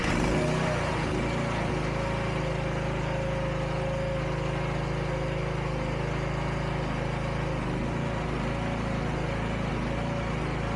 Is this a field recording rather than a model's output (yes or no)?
yes